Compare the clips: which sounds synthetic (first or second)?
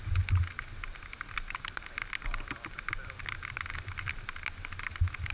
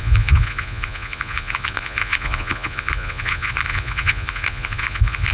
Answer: second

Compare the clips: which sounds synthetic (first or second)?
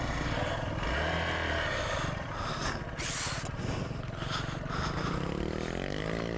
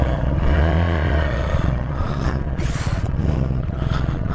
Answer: second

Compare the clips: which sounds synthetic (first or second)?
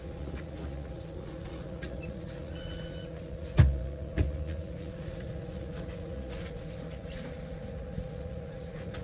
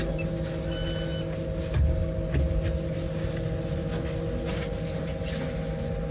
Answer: first